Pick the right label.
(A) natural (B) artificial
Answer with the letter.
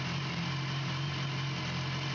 A